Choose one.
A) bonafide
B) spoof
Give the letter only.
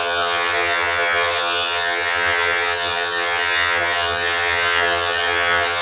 B